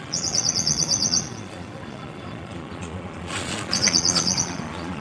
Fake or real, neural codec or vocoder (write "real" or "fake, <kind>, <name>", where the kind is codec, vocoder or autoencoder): fake, vocoder, Vocos